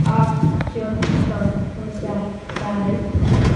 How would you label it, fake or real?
fake